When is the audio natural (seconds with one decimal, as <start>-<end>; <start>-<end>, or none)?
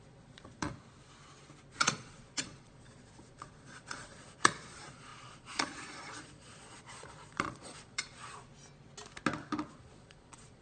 0.7-1.7; 8.5-9.7